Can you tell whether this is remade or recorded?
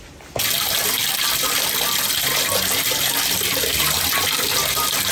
recorded